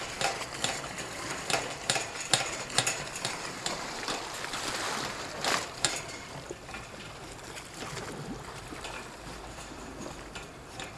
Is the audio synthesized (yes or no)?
yes